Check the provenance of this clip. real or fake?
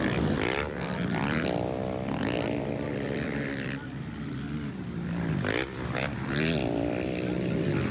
fake